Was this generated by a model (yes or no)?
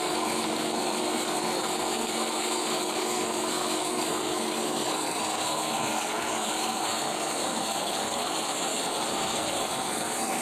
yes